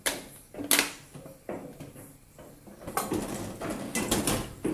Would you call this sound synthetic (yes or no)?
no